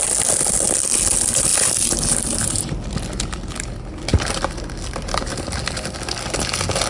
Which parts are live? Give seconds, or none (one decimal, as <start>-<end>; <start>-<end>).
0.0-6.9